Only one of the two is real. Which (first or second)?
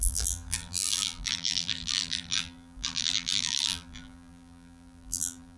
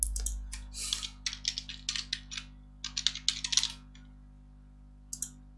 second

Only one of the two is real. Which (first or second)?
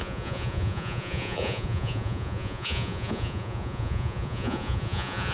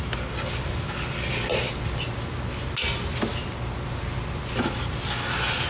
second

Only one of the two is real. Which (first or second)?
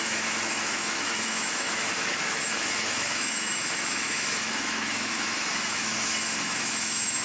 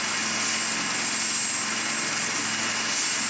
second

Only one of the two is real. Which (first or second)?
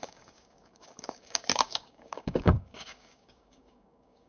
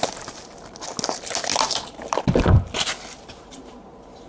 second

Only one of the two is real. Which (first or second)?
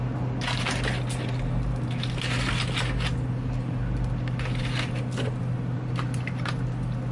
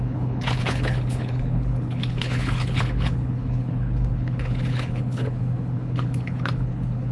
first